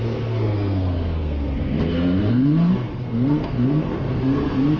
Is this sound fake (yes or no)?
yes